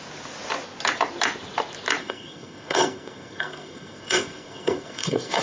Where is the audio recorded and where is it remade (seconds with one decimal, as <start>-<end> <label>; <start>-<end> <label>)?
0.0-2.0 recorded; 2.0-5.4 remade